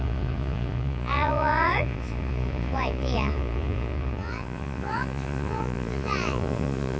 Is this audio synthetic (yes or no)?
yes